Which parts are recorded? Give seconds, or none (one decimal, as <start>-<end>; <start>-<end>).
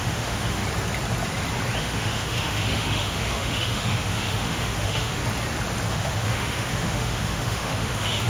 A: 0.6-1.8; 5.2-5.9